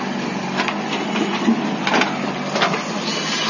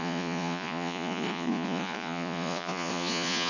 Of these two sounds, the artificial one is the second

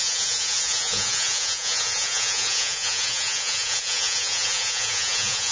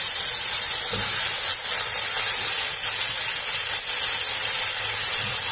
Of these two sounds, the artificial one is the first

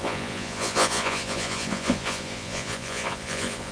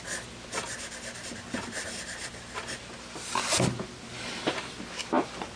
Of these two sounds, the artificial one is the first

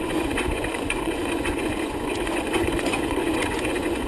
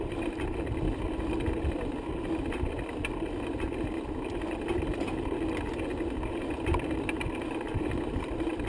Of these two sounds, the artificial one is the first